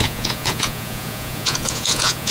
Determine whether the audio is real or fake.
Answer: fake